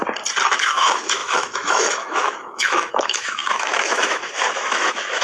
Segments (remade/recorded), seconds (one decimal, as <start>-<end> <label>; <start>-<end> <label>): 0.0-0.5 recorded; 0.5-5.2 remade